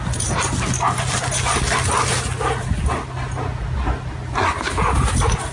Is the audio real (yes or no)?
yes